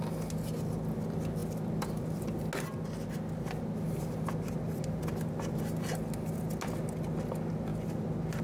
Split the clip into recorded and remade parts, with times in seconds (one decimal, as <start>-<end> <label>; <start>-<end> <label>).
0.0-8.4 recorded